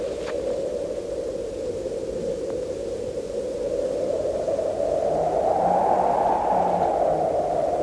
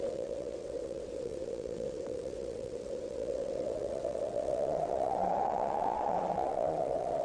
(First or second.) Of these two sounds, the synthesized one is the second